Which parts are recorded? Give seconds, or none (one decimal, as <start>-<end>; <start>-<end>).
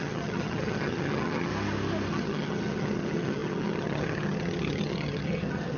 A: 1.5-2.1